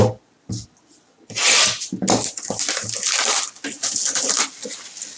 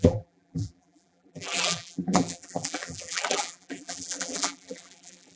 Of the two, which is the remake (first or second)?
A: second